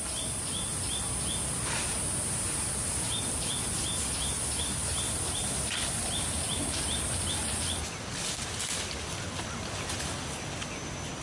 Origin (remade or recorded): recorded